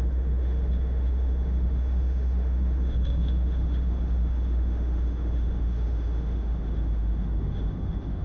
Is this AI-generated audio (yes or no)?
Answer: yes